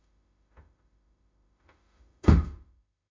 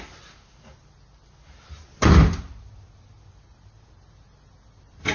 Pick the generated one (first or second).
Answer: first